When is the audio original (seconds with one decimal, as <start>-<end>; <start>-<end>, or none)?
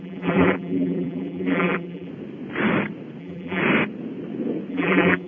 2.1-3.2; 3.6-4.7